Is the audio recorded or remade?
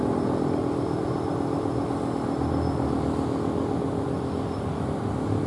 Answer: recorded